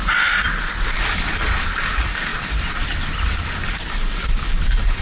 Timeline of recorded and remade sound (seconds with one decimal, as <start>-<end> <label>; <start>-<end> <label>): 0.0-5.0 recorded

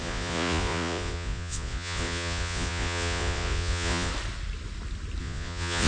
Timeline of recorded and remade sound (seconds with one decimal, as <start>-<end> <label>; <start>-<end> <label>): 0.0-4.1 remade; 4.1-5.2 recorded; 5.2-5.9 remade

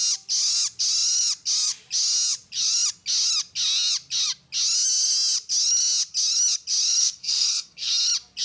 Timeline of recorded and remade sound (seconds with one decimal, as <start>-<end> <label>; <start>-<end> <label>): 0.0-7.0 recorded; 7.0-7.9 remade; 7.9-8.4 recorded